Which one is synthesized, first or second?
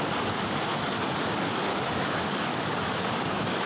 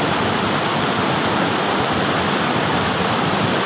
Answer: first